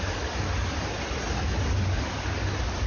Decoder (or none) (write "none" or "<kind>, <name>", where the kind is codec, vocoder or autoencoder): none